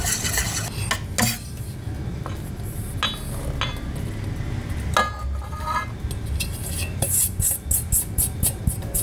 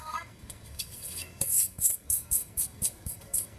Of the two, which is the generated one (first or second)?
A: second